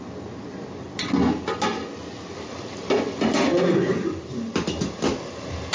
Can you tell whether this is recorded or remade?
recorded